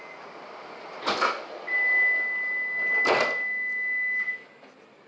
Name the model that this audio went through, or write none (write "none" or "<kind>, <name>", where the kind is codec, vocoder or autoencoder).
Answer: none